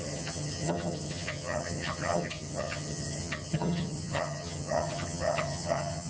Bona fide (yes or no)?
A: no